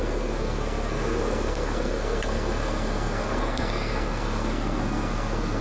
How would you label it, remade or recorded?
remade